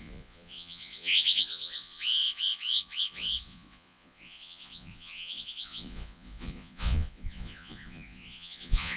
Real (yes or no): no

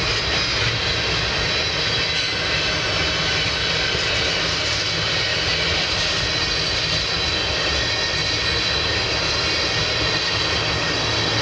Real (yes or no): yes